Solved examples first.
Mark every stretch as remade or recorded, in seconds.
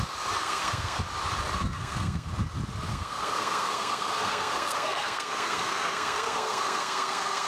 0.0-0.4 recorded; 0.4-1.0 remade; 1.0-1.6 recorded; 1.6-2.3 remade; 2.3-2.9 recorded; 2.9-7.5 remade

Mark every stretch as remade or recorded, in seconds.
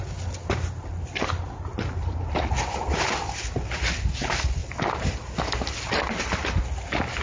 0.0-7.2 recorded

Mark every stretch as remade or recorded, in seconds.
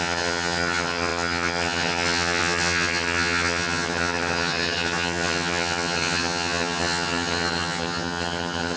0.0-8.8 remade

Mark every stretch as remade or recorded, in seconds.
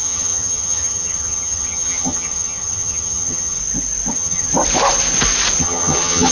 0.0-3.6 remade; 3.6-4.1 recorded; 4.1-4.5 remade; 4.5-5.6 recorded; 5.6-6.3 remade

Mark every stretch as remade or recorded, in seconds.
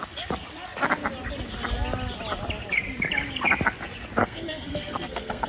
0.0-4.2 recorded; 4.2-5.5 remade